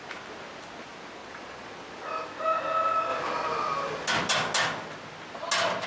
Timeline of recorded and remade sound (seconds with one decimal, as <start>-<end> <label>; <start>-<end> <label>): 0.0-1.2 recorded; 1.2-1.7 remade; 1.7-5.9 recorded